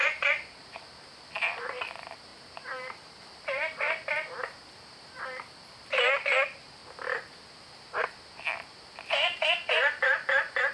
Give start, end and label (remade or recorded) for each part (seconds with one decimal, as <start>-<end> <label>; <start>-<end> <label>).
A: 0.0-10.7 remade